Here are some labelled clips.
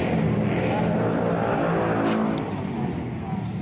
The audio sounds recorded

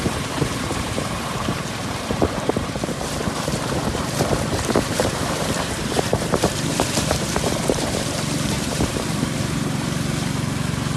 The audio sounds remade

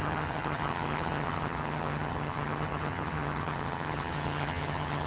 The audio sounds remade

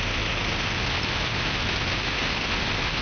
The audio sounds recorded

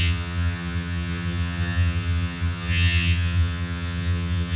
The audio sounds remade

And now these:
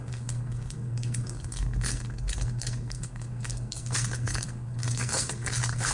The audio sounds remade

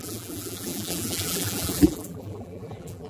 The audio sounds remade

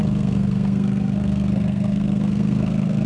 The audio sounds remade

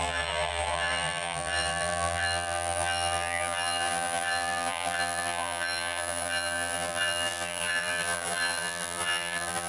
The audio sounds remade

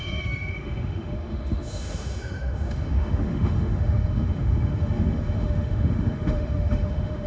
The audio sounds remade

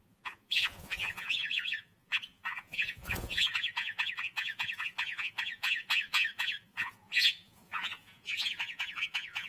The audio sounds remade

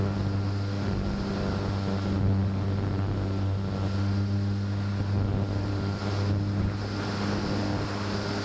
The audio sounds recorded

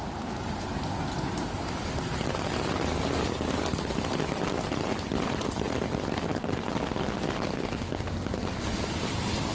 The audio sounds recorded